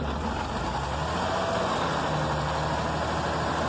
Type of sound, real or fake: real